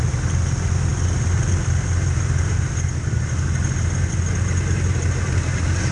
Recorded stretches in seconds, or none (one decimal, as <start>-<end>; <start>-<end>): 0.0-5.9